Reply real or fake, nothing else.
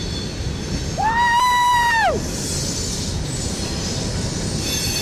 fake